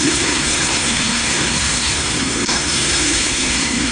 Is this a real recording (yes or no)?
no